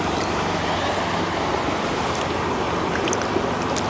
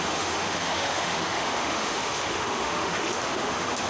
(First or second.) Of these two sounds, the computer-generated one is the second